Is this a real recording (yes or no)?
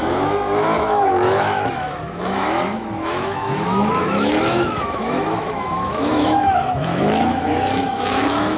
no